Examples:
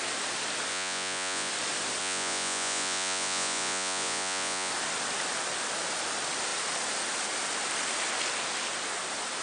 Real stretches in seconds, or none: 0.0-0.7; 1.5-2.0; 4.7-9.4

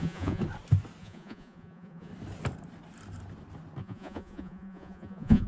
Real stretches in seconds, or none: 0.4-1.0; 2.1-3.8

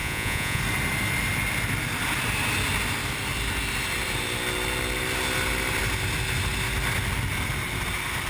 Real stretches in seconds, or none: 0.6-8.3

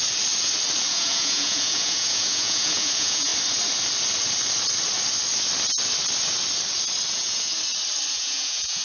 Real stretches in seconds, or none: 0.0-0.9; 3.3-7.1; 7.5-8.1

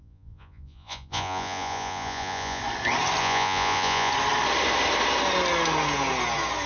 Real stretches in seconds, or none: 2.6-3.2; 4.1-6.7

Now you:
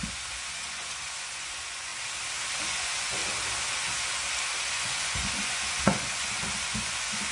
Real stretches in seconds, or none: 1.9-2.6; 3.2-4.7

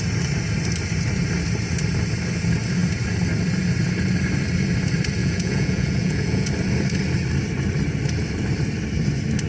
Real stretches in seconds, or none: 0.0-5.2; 6.5-9.5